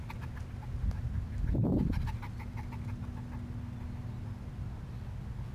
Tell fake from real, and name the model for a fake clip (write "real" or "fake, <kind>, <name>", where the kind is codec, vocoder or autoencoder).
real